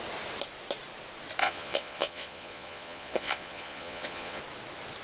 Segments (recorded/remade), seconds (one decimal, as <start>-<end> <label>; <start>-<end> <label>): 0.0-1.4 recorded; 1.4-4.4 remade; 4.4-5.0 recorded